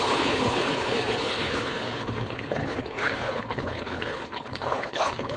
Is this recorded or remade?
remade